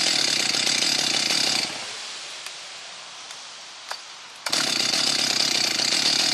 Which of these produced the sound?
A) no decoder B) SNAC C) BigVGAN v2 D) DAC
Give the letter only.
A